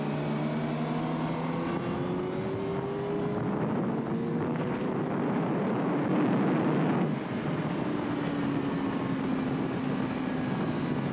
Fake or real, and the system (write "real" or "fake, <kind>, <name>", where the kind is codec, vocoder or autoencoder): real